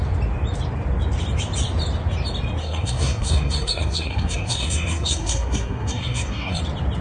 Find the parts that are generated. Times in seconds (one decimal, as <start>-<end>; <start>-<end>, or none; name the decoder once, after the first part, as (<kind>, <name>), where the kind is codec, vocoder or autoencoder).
2.6-6.6 (codec, SNAC)